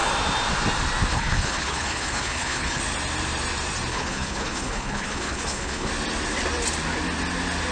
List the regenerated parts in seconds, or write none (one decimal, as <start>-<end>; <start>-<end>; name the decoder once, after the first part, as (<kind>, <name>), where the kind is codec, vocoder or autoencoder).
1.1-2.8 (codec, HILCodec); 3.9-5.9